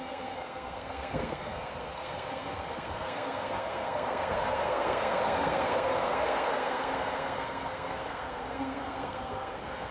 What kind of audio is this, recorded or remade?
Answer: remade